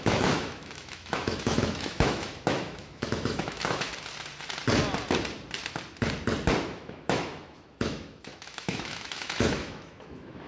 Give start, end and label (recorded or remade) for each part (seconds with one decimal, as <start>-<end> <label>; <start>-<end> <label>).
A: 0.0-3.9 remade; 3.9-6.7 recorded; 6.7-10.5 remade